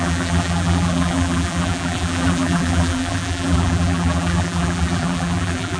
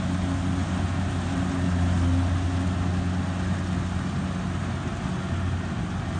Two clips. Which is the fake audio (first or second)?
first